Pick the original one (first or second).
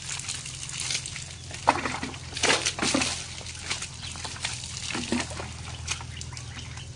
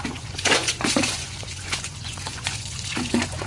first